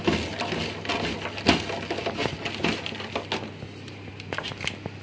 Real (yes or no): yes